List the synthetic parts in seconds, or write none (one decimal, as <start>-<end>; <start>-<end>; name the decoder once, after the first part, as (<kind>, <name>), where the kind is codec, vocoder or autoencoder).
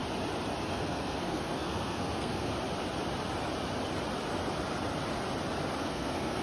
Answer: 0.7-2.5 (codec, SNAC); 5.8-6.4